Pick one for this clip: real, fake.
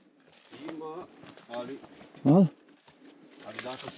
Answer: real